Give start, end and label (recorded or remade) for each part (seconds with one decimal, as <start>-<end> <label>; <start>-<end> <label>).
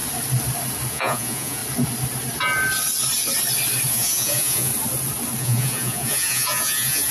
0.0-0.9 recorded; 0.9-1.6 remade; 1.6-3.9 recorded; 3.9-4.7 remade; 4.7-5.4 recorded; 5.4-7.1 remade